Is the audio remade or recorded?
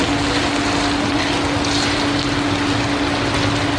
recorded